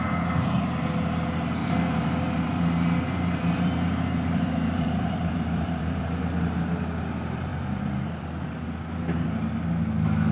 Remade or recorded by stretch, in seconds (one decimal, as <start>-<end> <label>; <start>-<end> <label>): 0.0-1.6 recorded; 1.6-6.0 remade; 6.0-7.5 recorded; 7.5-8.1 remade; 8.1-10.3 recorded